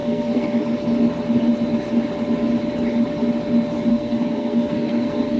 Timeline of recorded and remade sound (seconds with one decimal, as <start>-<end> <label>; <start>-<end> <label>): 0.0-0.6 remade; 0.6-3.9 recorded; 3.9-5.4 remade